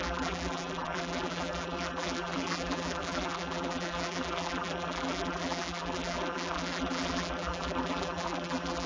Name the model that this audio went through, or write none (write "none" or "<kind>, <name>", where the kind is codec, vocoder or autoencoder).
vocoder, BigVGAN v2